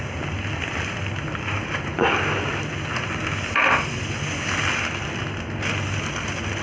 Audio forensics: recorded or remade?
recorded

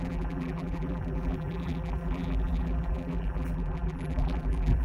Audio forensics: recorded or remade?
remade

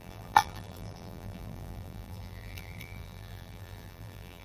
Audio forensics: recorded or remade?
remade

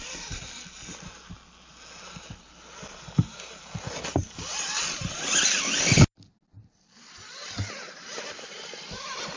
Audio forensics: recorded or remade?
recorded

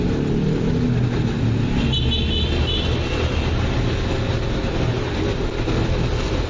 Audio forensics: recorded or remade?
recorded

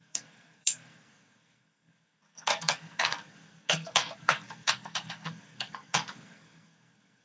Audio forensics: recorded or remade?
remade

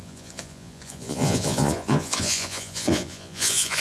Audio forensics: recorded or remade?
remade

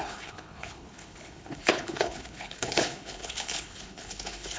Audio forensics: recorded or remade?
remade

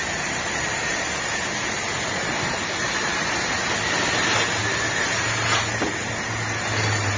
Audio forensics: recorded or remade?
recorded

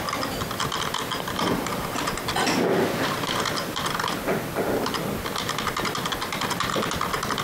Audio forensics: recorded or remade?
recorded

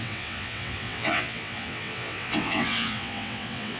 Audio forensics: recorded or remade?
remade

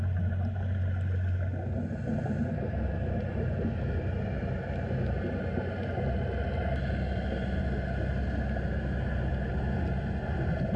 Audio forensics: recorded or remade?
recorded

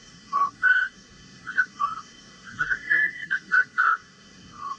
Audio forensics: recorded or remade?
remade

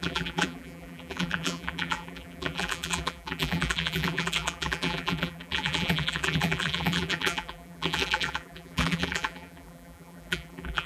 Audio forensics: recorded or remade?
remade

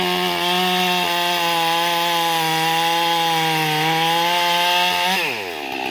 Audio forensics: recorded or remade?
recorded